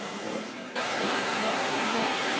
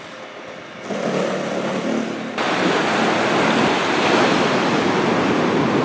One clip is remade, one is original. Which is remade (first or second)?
first